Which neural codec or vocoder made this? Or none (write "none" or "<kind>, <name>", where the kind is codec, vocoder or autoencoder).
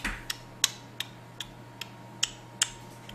none